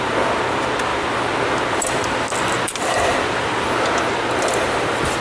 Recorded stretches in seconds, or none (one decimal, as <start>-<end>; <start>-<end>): 0.0-5.2